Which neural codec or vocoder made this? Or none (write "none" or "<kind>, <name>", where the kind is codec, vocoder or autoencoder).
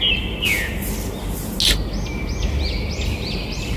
none